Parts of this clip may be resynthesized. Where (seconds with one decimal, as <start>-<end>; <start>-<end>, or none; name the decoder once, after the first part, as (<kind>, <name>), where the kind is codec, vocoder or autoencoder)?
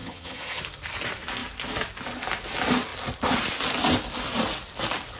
0.0-0.6 (vocoder, HiFi-GAN)